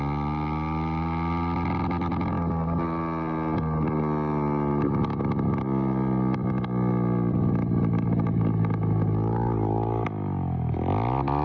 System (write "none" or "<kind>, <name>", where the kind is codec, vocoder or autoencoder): none